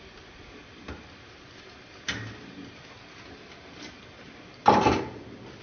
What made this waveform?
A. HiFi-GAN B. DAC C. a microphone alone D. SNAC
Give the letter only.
C